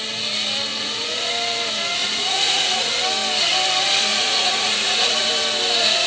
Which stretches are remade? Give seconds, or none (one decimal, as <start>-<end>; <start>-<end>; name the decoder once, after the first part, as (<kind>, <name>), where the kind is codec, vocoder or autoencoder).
0.7-1.3 (vocoder, Vocos); 2.0-2.9; 4.1-5.3